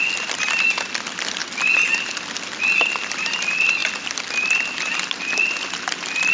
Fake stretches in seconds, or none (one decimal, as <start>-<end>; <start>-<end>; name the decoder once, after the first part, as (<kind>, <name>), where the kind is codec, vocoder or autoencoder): none